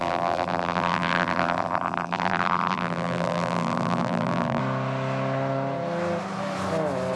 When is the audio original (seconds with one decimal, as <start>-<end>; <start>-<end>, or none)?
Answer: 4.6-7.2